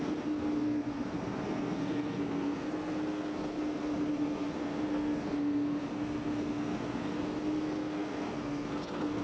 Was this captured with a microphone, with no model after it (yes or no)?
no